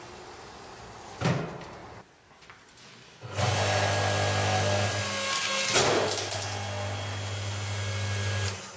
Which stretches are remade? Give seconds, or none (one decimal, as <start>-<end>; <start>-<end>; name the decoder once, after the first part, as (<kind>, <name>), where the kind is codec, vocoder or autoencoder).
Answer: none

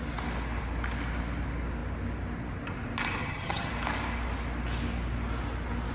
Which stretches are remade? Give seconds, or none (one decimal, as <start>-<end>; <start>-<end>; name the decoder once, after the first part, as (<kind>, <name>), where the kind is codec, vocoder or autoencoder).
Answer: 3.2-3.7 (vocoder, HiFi-GAN)

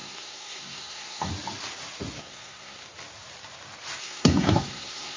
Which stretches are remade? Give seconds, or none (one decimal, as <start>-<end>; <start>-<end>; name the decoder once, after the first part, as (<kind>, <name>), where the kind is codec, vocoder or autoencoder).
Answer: 0.0-1.3 (codec, SNAC); 2.2-2.8; 4.0-5.2

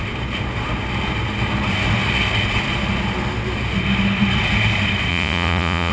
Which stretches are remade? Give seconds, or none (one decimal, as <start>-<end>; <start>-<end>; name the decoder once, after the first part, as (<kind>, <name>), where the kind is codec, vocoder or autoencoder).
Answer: 5.1-5.9 (vocoder, Vocos)

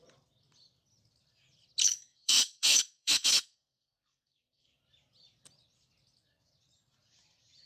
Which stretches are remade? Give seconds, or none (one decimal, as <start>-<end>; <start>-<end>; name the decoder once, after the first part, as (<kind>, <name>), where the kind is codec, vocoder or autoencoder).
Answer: 1.8-4.8 (codec, SNAC)

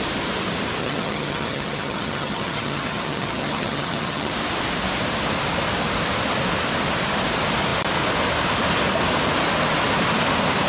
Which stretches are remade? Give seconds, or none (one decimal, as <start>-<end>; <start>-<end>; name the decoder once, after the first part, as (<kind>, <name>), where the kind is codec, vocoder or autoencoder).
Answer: 0.8-4.3 (vocoder, HiFi-GAN)

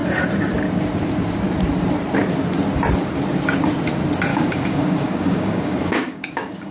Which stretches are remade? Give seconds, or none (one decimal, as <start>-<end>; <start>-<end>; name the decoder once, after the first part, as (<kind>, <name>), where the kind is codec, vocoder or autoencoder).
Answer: 4.3-6.7 (codec, DAC)

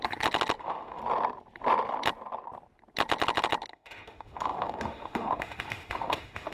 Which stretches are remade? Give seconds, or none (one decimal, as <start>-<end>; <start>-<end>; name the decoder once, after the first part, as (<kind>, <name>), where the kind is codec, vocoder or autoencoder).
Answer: 0.6-1.0 (autoencoder, DAC-VAE); 3.7-6.5